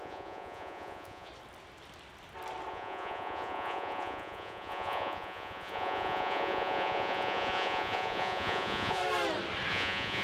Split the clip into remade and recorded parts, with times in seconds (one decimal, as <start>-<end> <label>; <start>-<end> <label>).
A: 0.0-1.3 remade; 1.3-2.7 recorded; 2.7-9.0 remade; 9.0-9.7 recorded; 9.7-10.2 remade